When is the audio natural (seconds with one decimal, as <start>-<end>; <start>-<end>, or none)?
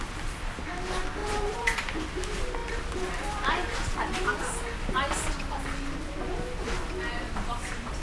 0.0-1.2; 2.1-2.6; 4.1-8.0